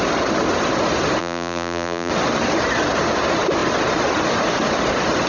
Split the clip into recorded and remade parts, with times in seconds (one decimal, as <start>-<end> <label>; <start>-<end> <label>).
0.0-1.2 recorded; 1.2-2.1 remade; 2.1-5.3 recorded